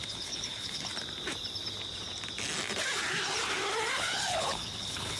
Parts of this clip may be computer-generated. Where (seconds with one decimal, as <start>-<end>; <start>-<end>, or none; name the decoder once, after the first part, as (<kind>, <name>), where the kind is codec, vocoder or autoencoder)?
0.0-0.9 (codec, HILCodec); 4.0-5.2